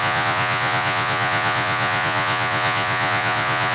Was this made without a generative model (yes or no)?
no